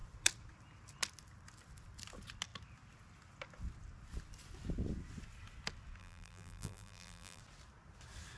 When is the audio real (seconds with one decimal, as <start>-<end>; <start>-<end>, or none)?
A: 0.0-6.0; 7.4-8.4